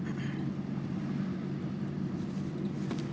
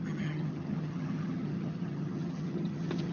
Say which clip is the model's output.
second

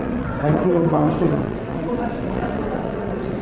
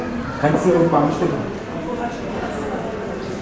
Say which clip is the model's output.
first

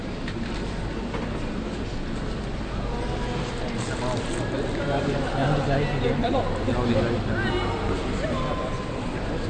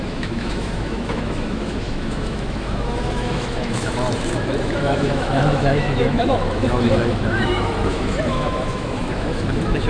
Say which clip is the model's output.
second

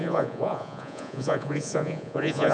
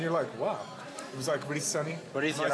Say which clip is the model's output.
first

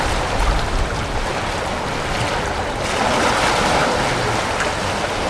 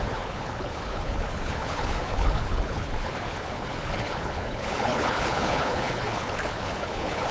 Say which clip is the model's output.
second